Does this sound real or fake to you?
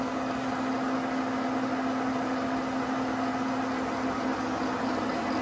real